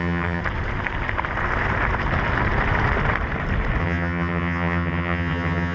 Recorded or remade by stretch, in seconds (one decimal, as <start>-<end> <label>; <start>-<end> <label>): 0.0-0.4 remade; 0.4-3.8 recorded; 3.8-5.7 remade